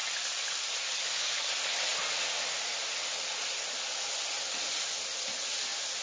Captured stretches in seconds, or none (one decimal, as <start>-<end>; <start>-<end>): 0.0-6.0